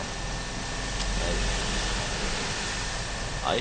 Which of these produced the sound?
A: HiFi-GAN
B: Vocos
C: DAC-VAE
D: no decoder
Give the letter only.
D